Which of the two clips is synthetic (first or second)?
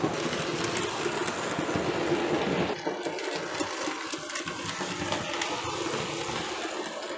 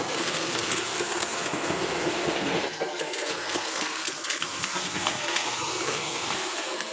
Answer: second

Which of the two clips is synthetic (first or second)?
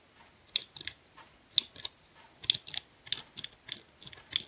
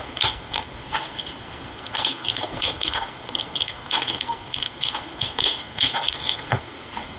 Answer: second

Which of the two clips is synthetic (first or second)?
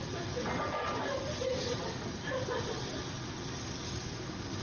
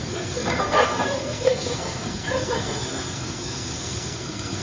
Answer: second